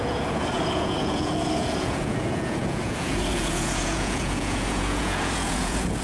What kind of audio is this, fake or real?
fake